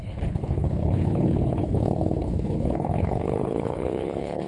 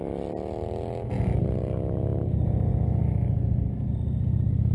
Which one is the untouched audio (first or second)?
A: second